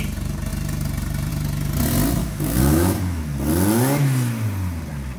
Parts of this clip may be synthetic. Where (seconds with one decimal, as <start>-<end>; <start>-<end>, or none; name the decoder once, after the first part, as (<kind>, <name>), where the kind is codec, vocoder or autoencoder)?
2.2-3.2 (codec, DAC)